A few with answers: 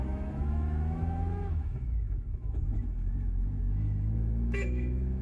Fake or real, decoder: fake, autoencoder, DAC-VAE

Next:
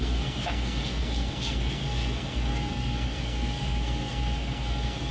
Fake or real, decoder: fake, codec, SNAC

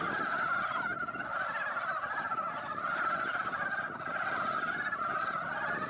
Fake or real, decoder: real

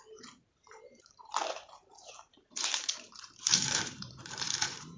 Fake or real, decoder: fake, vocoder, BigVGAN v2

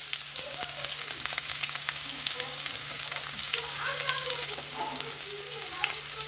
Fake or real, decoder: fake, codec, DAC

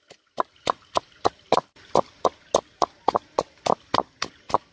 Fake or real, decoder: real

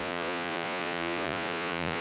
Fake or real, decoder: fake, vocoder, Vocos